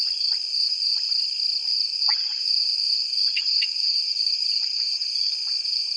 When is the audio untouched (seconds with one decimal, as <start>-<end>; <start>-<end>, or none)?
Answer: 0.0-0.5; 1.1-1.7; 5.3-6.0